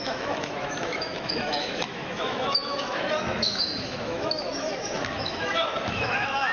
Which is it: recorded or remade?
remade